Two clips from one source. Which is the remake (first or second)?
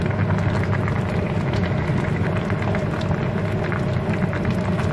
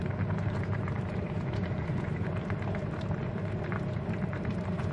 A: second